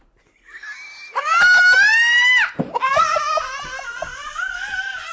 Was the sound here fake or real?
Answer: real